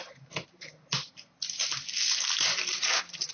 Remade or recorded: recorded